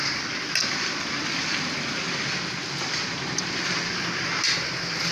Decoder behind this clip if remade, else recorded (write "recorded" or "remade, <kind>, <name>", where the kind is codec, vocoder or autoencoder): recorded